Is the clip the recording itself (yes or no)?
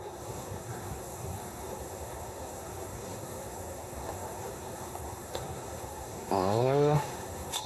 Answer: no